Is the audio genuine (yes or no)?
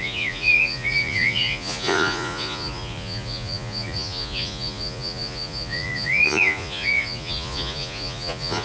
no